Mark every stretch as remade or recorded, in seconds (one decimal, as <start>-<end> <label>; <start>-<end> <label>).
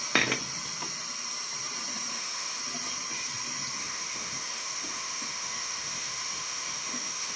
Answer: 0.0-2.1 recorded; 2.1-2.6 remade; 2.6-3.8 recorded; 3.8-7.4 remade